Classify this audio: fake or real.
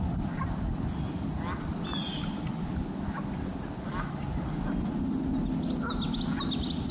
real